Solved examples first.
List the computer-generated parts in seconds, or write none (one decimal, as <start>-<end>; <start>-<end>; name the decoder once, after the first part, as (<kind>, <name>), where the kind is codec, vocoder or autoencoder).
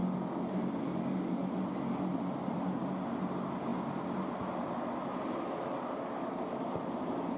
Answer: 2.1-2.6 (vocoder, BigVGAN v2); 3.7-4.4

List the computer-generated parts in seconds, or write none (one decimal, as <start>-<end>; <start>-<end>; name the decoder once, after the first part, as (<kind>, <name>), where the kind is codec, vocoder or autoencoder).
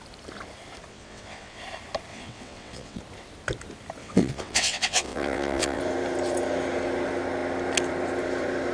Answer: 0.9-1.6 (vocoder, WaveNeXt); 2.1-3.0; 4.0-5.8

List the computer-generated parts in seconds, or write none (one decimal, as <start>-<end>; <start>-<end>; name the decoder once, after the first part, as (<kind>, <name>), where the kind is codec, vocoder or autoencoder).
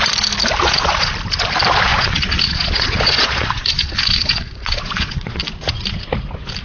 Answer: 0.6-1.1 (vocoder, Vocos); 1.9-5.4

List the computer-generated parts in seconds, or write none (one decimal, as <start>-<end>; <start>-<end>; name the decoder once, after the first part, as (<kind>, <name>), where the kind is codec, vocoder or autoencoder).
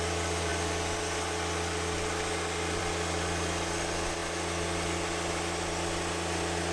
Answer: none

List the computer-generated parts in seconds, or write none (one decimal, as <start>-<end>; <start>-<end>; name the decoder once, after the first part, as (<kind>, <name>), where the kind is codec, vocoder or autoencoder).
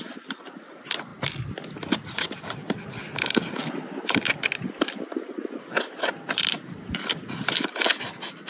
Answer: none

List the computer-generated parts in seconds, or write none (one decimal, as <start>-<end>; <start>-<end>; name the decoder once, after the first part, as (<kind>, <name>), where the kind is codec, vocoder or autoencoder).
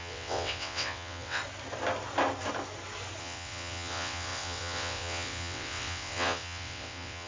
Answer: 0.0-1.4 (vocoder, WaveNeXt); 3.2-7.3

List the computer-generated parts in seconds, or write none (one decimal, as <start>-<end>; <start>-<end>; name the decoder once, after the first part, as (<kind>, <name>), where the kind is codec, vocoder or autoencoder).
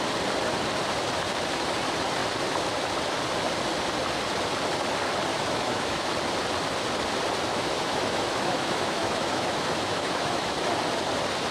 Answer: 5.3-6.1 (autoencoder, DAC-VAE); 7.5-10.7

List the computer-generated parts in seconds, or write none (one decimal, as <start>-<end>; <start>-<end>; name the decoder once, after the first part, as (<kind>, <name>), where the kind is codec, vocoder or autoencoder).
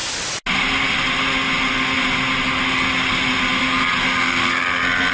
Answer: none